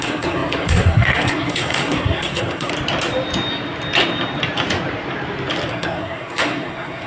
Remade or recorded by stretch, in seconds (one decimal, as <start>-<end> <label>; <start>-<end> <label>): 0.0-2.7 remade; 2.7-5.7 recorded; 5.7-7.1 remade